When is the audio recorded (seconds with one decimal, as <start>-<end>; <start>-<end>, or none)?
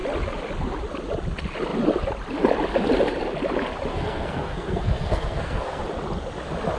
0.0-3.9; 5.8-6.8